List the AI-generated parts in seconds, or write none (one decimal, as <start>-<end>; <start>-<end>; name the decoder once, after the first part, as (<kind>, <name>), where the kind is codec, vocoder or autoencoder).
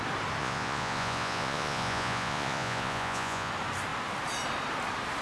0.4-3.5 (vocoder, Vocos)